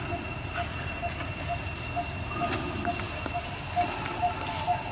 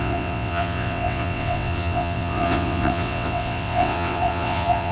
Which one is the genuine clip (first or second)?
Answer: first